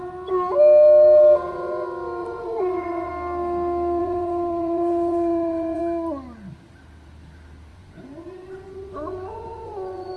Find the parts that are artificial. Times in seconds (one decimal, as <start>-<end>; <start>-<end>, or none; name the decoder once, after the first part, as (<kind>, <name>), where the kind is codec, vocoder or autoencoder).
2.2-3.1 (vocoder, Vocos); 4.0-5.8; 7.7-10.2